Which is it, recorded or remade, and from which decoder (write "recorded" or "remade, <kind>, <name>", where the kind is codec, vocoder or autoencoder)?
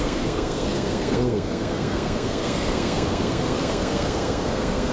remade, codec, SNAC